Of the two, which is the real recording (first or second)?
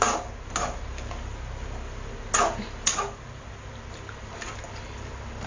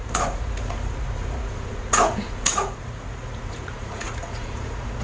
first